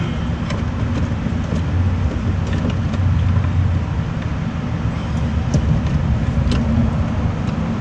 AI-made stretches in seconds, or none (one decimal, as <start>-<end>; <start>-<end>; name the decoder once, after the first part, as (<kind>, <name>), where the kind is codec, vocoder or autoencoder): none